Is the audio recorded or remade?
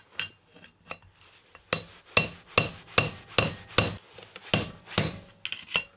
recorded